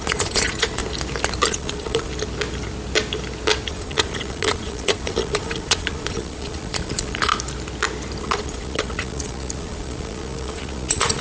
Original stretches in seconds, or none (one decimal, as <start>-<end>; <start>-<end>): 0.8-1.5; 2.1-3.7; 7.3-8.2